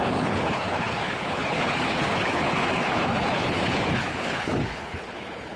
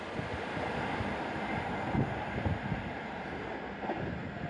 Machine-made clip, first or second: first